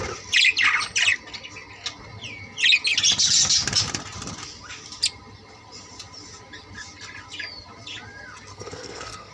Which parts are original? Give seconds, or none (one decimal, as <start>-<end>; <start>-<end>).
0.0-8.5